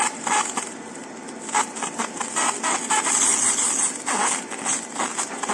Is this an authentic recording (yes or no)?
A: yes